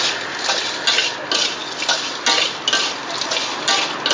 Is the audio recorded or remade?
recorded